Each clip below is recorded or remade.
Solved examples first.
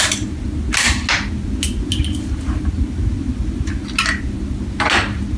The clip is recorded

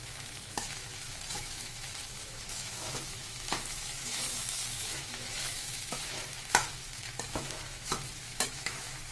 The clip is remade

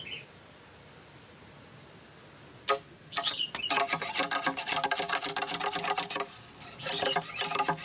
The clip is recorded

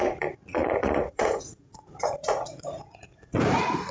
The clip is remade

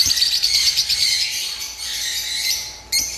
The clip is remade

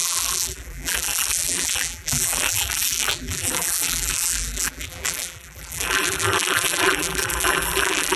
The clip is remade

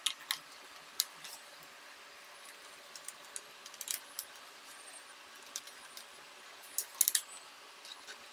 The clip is recorded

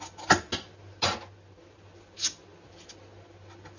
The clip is recorded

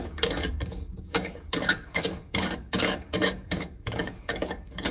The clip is remade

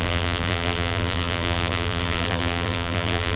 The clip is remade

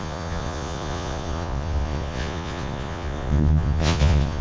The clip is remade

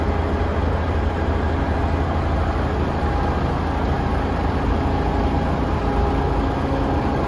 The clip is recorded